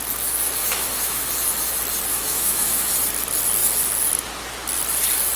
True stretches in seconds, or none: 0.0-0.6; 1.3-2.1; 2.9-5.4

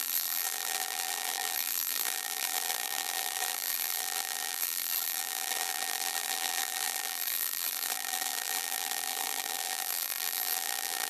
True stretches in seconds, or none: none